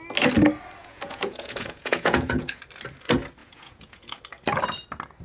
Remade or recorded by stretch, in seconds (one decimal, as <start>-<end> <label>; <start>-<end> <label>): 0.0-0.8 recorded; 0.8-2.6 remade; 2.6-3.4 recorded; 3.4-4.2 remade; 4.2-5.2 recorded